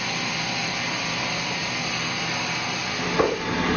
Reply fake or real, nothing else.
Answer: real